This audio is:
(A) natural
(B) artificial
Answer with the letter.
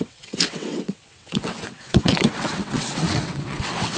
B